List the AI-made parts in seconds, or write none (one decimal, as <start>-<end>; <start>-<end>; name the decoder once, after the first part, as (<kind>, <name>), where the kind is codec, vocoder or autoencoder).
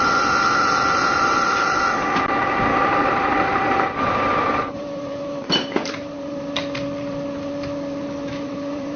1.0-1.5 (vocoder, BigVGAN v2); 2.7-6.4; 8.3-9.0